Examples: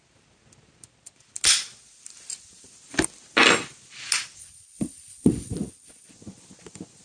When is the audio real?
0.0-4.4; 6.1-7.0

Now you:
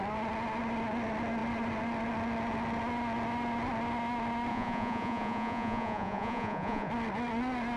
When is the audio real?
0.0-4.5; 6.9-7.8

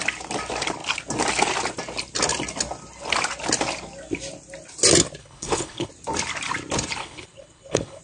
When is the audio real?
0.0-5.2; 5.9-7.0